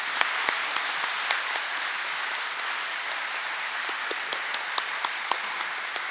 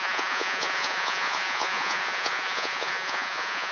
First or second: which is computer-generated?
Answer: second